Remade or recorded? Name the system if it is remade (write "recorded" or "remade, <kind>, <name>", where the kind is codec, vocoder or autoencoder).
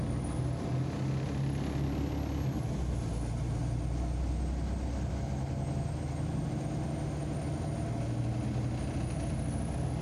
recorded